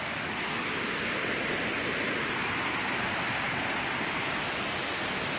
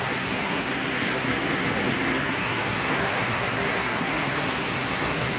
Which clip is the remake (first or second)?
second